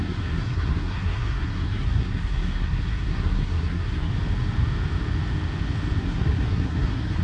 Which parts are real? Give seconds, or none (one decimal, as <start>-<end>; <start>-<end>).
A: 4.1-6.0